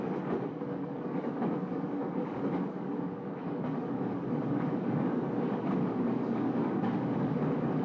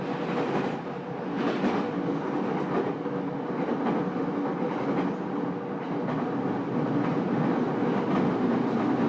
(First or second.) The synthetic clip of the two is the first